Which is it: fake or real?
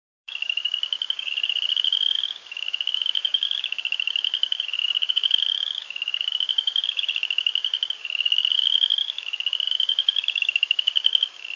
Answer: fake